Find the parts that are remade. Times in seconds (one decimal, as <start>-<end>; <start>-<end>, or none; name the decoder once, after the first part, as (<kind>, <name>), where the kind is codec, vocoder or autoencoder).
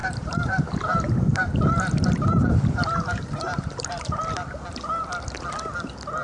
0.0-0.6 (vocoder, BigVGAN v2); 1.3-4.2